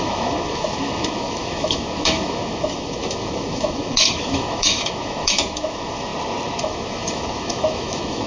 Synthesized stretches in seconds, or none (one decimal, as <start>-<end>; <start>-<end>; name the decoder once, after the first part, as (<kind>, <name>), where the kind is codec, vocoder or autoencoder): 0.0-6.1 (autoencoder, DAC-VAE); 6.6-8.3

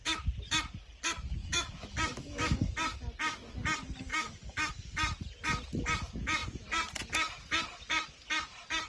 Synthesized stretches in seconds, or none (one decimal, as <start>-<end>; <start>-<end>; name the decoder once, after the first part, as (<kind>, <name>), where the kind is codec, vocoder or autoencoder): 1.4-2.7 (autoencoder, DAC-VAE); 4.1-4.7